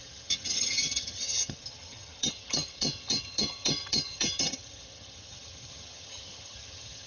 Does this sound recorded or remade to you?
remade